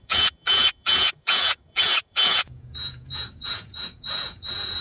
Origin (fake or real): fake